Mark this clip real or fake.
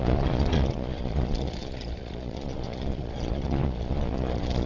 fake